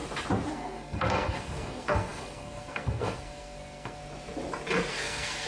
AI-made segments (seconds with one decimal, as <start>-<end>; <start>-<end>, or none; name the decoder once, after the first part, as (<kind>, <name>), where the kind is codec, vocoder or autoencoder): 0.5-4.0 (codec, SNAC); 4.9-5.5